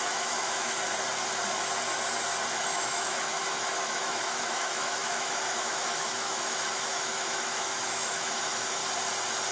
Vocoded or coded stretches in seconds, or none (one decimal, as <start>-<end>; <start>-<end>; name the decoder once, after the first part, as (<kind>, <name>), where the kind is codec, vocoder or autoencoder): 0.0-0.8 (autoencoder, DAC-VAE); 2.5-8.8